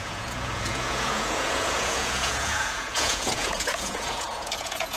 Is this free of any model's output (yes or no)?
no